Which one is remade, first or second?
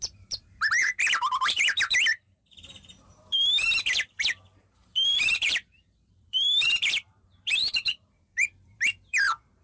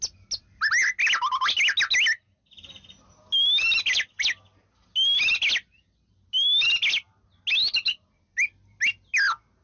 first